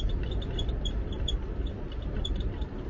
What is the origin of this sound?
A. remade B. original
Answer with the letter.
B